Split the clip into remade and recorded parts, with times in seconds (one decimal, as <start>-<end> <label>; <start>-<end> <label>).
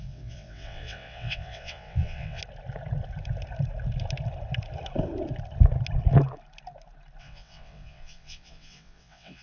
0.0-2.4 remade; 2.4-7.2 recorded; 7.2-9.4 remade